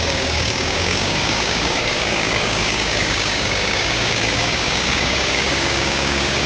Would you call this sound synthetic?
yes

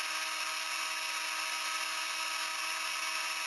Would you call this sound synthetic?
no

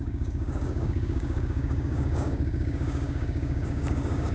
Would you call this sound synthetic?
yes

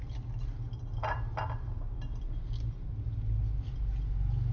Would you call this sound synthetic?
no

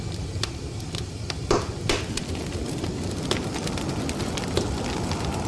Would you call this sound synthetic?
no